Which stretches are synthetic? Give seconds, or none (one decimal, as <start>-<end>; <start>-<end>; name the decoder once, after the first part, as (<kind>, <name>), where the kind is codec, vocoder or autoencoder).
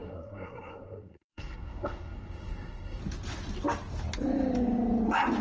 0.0-3.0 (codec, SNAC)